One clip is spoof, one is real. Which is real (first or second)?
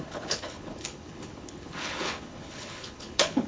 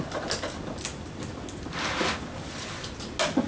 second